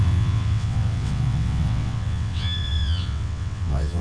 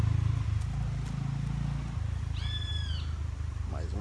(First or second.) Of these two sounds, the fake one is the first